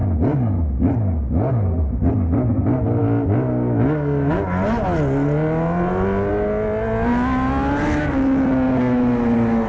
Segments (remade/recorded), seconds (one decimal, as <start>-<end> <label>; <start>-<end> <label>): 0.0-9.7 recorded